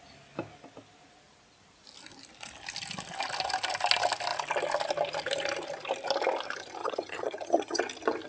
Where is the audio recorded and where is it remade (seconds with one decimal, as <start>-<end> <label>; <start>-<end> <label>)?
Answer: 0.0-6.8 recorded; 6.8-7.8 remade; 7.8-8.3 recorded